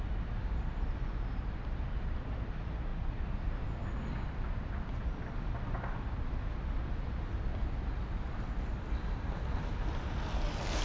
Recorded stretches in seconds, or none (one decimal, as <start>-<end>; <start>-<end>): 0.0-10.8